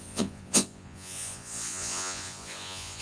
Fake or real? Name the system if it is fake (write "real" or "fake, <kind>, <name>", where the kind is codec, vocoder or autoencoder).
fake, vocoder, Vocos